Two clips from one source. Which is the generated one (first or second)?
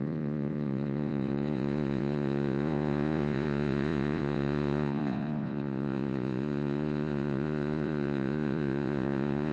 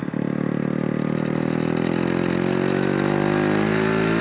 first